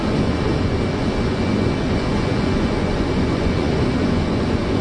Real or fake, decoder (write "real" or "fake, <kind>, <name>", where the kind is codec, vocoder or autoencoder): fake, vocoder, Vocos